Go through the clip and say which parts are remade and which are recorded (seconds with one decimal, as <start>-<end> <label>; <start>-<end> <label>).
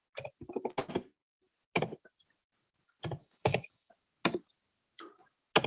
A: 0.0-3.2 recorded; 3.2-3.9 remade; 3.9-5.7 recorded